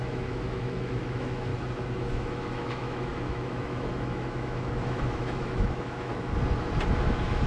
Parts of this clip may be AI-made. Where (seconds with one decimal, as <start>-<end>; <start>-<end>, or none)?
0.0-1.5; 2.0-6.1